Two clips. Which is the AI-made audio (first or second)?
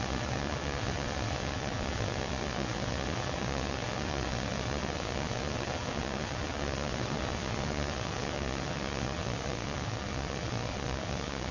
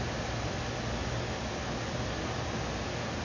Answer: first